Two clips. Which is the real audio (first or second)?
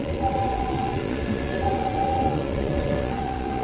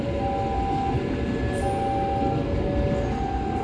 second